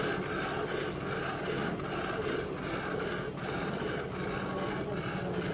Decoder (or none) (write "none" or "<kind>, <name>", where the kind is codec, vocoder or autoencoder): none